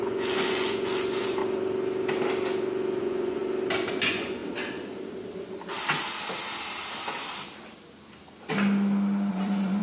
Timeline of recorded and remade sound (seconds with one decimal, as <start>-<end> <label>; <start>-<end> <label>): 0.0-1.4 remade; 1.4-3.0 recorded; 3.0-3.4 remade; 3.4-3.9 recorded; 3.9-4.4 remade; 4.4-9.3 recorded; 9.3-9.8 remade